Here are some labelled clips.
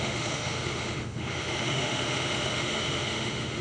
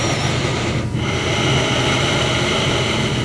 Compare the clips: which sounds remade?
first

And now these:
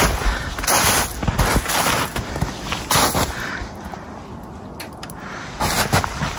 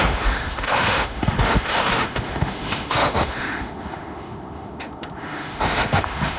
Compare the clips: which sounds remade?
second